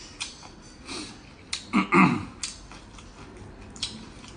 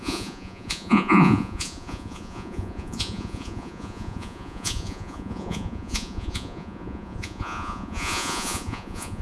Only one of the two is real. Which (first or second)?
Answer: first